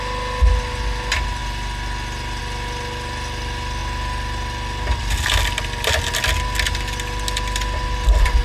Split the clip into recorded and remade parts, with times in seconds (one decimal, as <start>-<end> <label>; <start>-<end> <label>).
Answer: 0.0-8.4 recorded